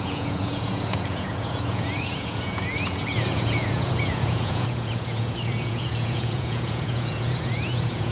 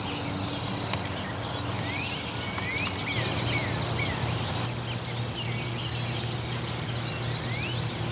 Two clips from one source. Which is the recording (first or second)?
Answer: second